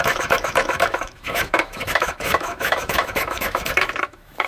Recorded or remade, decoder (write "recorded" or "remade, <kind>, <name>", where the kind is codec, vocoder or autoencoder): remade, autoencoder, DAC-VAE